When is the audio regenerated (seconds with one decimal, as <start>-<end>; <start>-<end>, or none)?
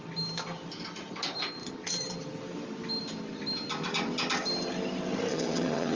5.3-6.0